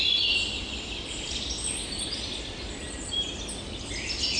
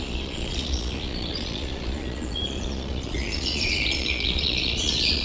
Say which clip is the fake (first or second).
second